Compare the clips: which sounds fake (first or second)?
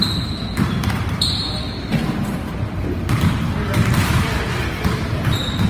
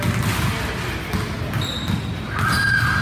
first